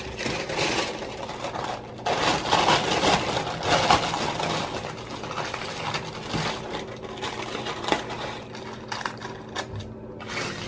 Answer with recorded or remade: recorded